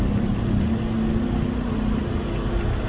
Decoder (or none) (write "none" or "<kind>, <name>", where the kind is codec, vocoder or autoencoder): none